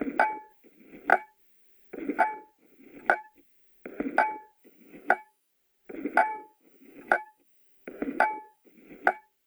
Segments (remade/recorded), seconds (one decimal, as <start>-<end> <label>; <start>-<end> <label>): 0.0-4.6 recorded; 4.6-5.5 remade; 5.5-6.3 recorded; 6.3-8.7 remade; 8.7-9.5 recorded